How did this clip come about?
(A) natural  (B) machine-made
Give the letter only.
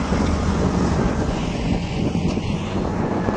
B